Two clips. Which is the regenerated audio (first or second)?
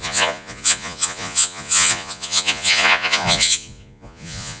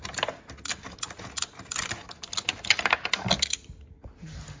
first